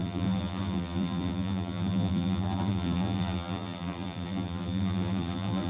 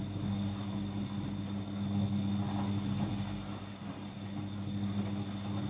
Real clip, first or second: second